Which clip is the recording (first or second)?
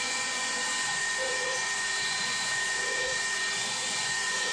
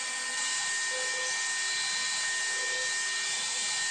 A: second